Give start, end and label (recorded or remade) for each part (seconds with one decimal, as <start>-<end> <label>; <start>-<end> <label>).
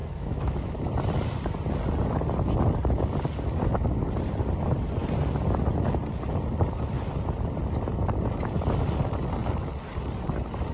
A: 0.0-0.9 remade; 0.9-10.7 recorded